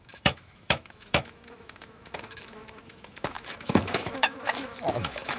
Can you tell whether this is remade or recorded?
remade